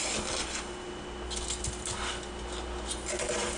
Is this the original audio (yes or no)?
yes